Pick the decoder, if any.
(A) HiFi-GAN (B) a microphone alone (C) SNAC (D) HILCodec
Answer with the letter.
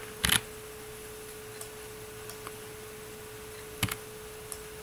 B